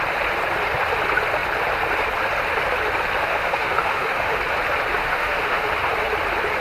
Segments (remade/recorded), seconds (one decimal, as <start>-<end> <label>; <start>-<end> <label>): 0.0-3.2 recorded; 3.2-4.4 remade; 4.4-5.0 recorded; 5.0-5.7 remade; 5.7-6.6 recorded